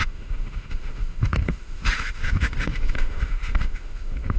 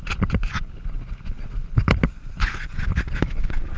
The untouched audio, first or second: second